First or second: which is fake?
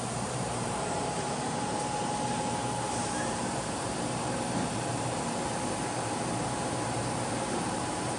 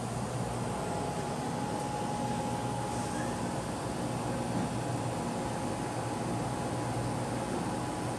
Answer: first